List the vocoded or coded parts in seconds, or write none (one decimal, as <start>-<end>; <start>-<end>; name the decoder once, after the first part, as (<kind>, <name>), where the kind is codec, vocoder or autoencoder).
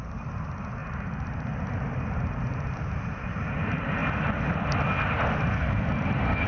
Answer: 0.0-4.0 (vocoder, BigVGAN v2); 5.8-6.5